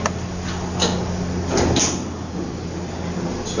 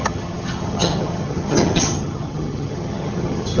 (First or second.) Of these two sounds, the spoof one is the second